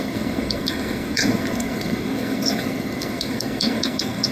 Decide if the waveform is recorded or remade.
remade